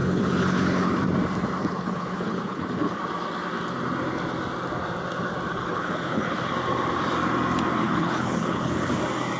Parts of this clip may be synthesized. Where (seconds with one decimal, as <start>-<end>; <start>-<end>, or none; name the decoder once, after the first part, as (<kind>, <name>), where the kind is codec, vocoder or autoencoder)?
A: 0.0-1.0 (codec, HILCodec); 1.6-3.0; 5.6-6.5; 7.8-9.0